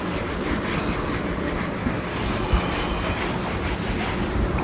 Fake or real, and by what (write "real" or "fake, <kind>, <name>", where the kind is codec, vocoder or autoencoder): real